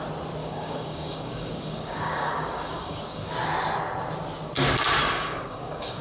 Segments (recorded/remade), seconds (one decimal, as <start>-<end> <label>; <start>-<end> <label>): 0.0-0.4 recorded; 0.4-3.3 remade; 3.3-5.0 recorded; 5.0-6.0 remade